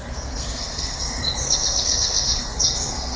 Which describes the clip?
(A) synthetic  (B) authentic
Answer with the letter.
A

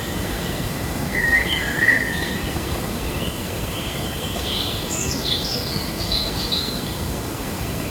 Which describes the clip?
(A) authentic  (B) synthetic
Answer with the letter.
B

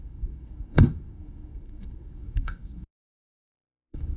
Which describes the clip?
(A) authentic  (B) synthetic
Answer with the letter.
B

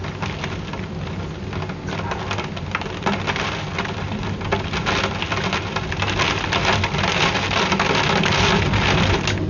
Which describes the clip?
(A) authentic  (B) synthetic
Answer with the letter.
A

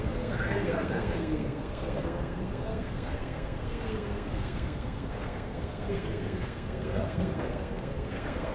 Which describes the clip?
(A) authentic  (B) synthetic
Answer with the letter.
B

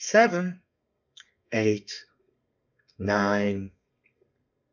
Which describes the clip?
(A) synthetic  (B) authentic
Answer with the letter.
A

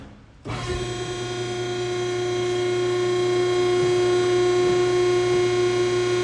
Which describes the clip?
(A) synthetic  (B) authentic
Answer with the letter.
B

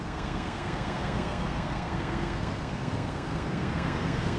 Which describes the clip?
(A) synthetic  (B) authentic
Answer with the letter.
A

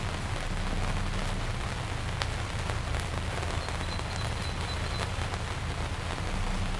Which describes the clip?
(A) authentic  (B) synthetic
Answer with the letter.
A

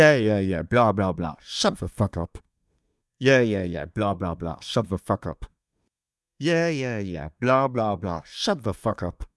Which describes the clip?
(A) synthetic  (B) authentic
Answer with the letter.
A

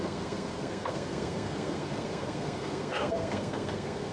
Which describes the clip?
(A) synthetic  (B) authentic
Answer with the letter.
A